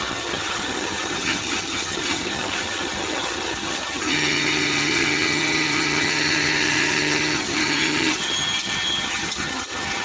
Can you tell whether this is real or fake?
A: fake